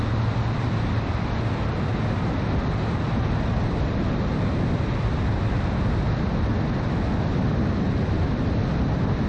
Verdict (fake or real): real